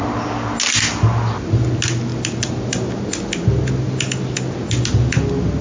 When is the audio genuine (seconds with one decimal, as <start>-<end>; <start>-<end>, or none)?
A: 0.0-5.6